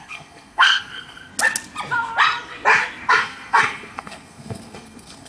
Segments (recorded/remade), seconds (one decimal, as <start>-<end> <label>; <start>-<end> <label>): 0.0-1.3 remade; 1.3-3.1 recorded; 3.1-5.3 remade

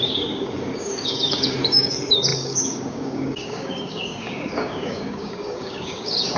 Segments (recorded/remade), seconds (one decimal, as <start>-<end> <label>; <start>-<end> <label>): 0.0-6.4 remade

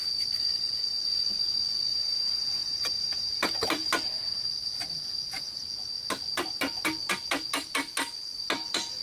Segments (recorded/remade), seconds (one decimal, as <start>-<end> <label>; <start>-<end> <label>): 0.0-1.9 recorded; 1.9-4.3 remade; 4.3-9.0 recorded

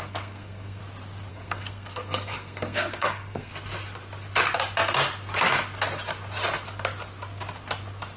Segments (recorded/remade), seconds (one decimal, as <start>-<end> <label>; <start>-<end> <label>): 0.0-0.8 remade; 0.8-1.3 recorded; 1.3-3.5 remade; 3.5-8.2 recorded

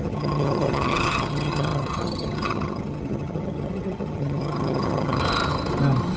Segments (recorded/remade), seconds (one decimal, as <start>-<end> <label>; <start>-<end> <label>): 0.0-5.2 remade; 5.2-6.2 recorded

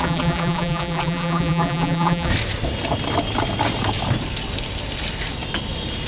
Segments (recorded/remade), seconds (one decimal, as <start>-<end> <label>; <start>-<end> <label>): 0.0-2.3 remade; 2.3-6.1 recorded

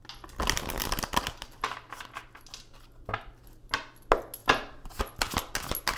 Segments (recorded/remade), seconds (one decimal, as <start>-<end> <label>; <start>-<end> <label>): 0.0-2.2 recorded; 2.2-2.9 remade; 2.9-4.4 recorded; 4.4-5.0 remade; 5.0-6.0 recorded